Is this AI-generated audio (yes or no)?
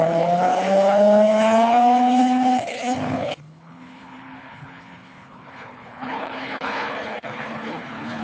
yes